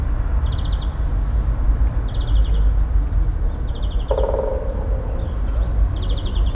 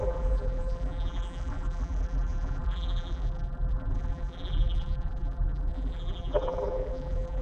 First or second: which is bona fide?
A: first